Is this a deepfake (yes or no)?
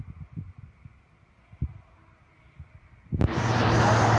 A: no